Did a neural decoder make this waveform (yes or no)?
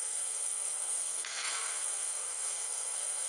yes